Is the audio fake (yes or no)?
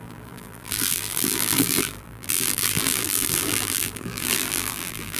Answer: yes